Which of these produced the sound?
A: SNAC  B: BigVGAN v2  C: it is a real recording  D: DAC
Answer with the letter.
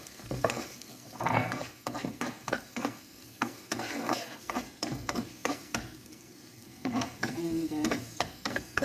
A